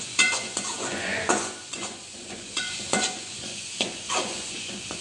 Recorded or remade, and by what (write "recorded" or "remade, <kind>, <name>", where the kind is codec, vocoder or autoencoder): remade, vocoder, Vocos